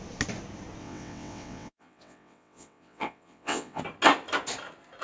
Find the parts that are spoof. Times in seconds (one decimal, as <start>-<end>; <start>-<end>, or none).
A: 0.8-3.8